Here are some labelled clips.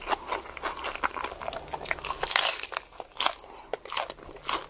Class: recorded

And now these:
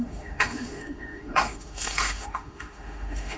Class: remade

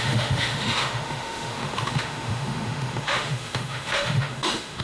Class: remade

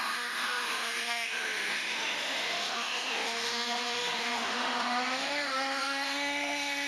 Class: remade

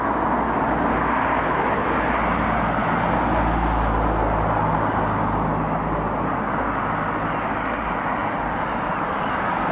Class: recorded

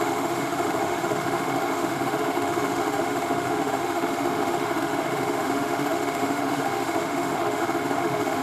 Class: remade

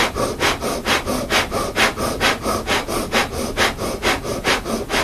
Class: recorded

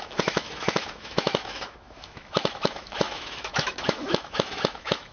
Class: remade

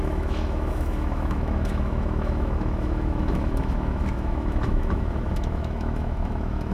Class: remade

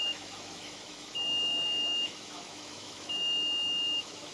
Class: remade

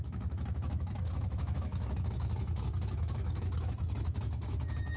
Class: remade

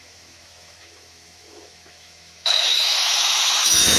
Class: remade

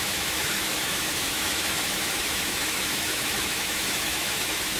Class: remade